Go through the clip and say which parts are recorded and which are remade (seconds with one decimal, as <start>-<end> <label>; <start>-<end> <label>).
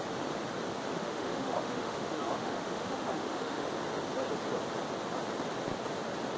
0.0-0.9 recorded; 0.9-3.7 remade; 3.7-6.4 recorded